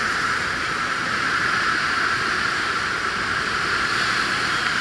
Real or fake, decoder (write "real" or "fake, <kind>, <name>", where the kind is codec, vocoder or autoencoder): fake, vocoder, BigVGAN v2